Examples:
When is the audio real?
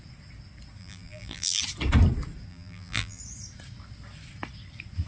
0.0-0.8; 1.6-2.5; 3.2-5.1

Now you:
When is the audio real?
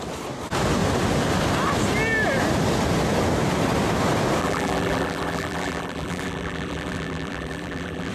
0.0-4.4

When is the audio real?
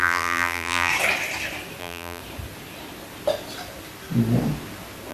0.9-1.8; 2.2-5.1